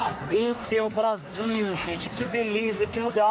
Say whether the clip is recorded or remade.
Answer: remade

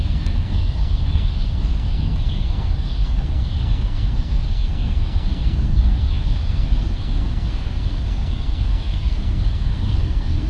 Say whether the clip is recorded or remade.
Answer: remade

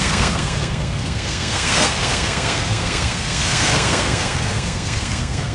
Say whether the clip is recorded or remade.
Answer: remade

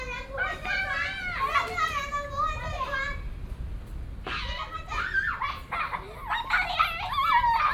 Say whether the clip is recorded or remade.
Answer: recorded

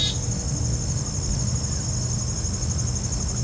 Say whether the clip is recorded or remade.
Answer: recorded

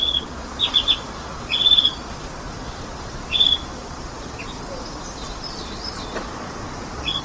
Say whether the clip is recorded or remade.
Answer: remade